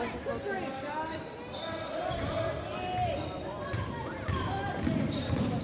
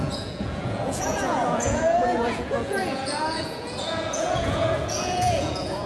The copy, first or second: second